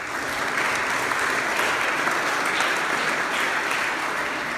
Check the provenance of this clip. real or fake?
real